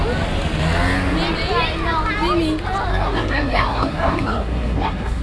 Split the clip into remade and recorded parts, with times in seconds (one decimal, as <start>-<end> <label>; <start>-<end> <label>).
0.0-2.9 recorded; 2.9-5.2 remade